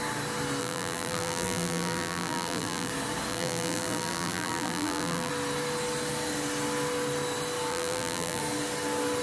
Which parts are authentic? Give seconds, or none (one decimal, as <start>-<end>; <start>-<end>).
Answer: 0.0-0.6; 2.9-3.3; 5.3-7.7; 8.4-9.2